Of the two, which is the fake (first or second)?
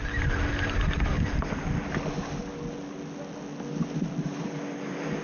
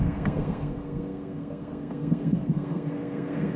second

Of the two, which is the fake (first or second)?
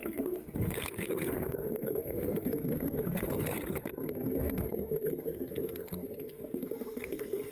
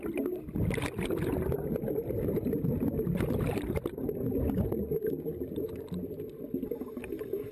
first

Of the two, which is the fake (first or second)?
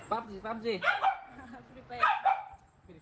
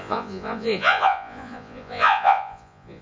second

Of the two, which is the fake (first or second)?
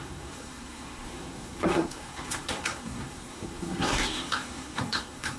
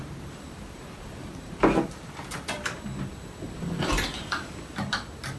first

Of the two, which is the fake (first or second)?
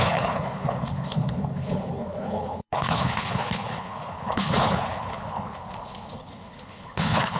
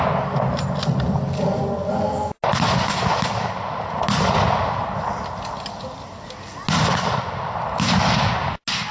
first